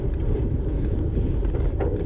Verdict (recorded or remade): remade